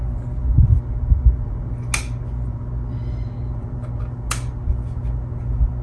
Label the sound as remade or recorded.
recorded